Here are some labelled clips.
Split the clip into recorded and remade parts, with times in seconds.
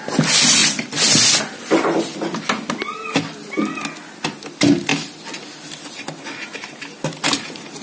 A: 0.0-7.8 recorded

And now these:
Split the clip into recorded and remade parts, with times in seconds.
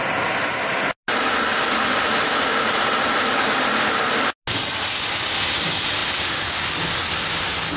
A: 0.0-7.8 recorded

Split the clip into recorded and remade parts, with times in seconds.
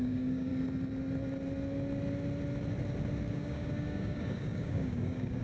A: 0.0-0.5 remade; 0.5-3.3 recorded; 3.3-5.4 remade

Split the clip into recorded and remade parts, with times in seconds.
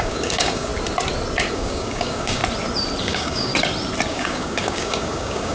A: 0.0-0.7 remade; 0.7-1.5 recorded; 1.5-2.4 remade; 2.4-3.0 recorded; 3.0-3.5 remade; 3.5-4.1 recorded; 4.1-5.5 remade